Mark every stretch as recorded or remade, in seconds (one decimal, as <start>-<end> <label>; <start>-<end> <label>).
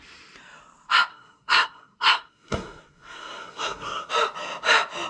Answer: 0.0-1.1 recorded; 1.1-4.1 remade; 4.1-5.1 recorded